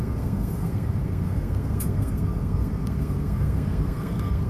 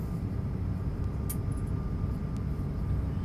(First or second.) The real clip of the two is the second